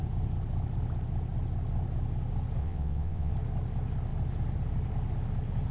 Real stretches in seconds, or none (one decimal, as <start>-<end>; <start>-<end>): 0.0-2.6; 3.3-5.7